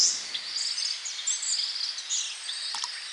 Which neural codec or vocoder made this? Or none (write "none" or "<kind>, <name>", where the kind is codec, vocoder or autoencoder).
none